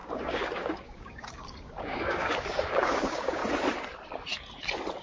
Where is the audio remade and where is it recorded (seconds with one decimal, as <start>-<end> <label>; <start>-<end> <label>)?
0.0-3.4 remade; 3.4-5.0 recorded